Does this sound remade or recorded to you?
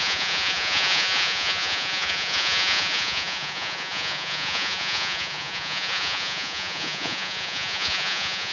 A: remade